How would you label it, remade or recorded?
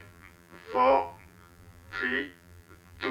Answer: remade